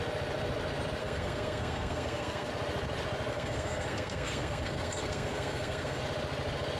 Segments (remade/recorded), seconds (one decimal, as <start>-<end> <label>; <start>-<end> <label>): 0.0-1.0 recorded; 1.0-2.5 remade; 2.5-3.3 recorded; 3.3-6.0 remade; 6.0-6.8 recorded